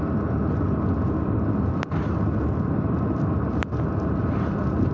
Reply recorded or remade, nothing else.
recorded